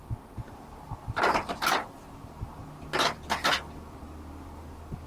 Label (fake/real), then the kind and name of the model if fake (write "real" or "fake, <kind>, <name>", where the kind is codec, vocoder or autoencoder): real